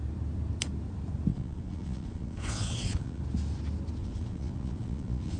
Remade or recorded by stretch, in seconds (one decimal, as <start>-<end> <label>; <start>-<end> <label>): 0.0-1.3 recorded; 1.3-3.2 remade; 3.2-4.0 recorded; 4.0-5.4 remade

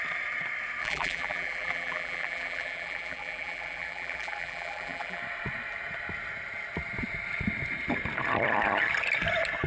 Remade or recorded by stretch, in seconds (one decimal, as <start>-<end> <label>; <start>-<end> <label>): 0.0-0.8 recorded; 0.8-5.2 remade; 5.2-9.7 recorded

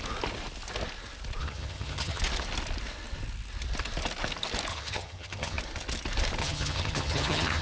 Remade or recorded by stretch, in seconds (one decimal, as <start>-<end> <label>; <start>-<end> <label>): 0.0-1.4 recorded; 1.4-2.2 remade; 2.2-4.7 recorded; 4.7-5.6 remade; 5.6-6.4 recorded; 6.4-7.6 remade

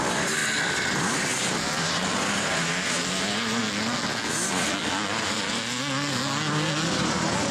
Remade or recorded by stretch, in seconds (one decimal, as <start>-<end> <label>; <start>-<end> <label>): 0.0-0.4 remade; 0.4-0.9 recorded; 0.9-3.6 remade; 3.6-7.5 recorded